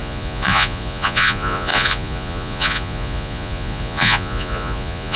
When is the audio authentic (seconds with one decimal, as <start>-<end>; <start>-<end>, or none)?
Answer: none